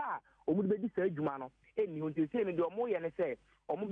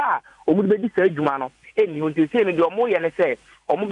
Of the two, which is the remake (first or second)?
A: second